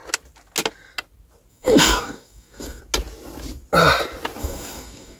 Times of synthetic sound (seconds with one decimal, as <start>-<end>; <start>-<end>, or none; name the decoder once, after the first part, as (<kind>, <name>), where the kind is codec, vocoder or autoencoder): 1.5-2.8 (codec, DAC); 4.4-5.2